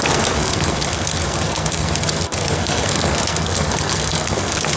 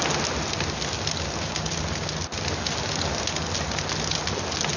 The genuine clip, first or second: second